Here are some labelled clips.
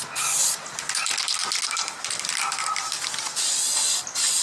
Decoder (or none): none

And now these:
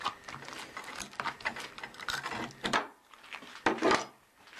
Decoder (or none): none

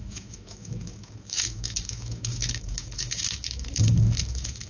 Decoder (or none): autoencoder, DAC-VAE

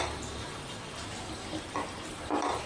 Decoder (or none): none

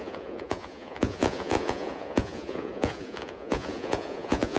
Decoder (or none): vocoder, Vocos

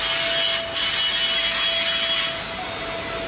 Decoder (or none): none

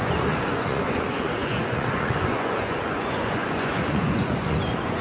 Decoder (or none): vocoder, Vocos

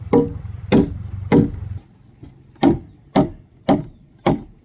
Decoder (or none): none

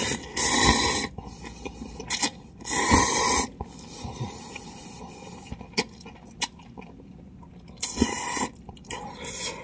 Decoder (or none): none